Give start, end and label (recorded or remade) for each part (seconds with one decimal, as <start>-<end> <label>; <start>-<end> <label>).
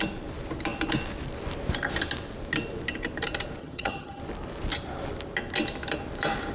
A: 0.0-3.6 recorded; 3.6-4.2 remade; 4.2-6.5 recorded